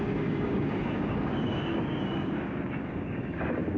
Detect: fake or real fake